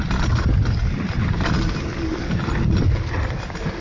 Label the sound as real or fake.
real